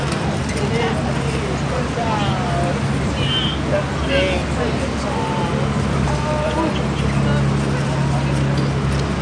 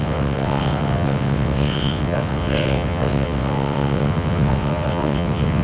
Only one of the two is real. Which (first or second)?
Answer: first